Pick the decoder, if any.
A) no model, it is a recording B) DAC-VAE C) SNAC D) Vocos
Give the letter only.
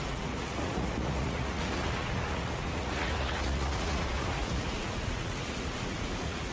D